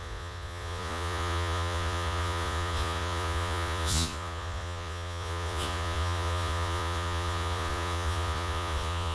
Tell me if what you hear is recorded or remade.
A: remade